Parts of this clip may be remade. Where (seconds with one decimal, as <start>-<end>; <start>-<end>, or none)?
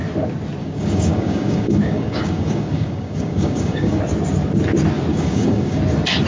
0.6-4.0; 5.1-5.8